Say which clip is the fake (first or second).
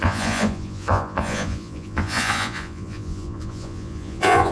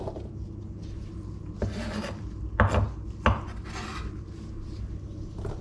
first